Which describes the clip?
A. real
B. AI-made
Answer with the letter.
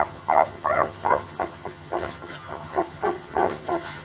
B